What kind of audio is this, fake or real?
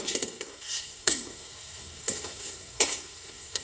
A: fake